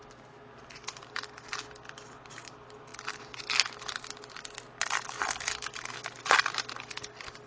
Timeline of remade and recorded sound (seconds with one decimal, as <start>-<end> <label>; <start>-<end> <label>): 0.0-7.5 recorded